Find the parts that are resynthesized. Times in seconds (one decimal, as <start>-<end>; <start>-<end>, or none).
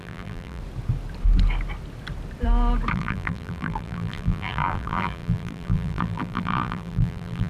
0.0-0.6; 2.9-7.5